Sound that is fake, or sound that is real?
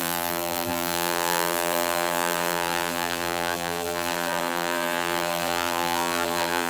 fake